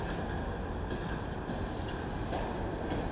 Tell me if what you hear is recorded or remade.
recorded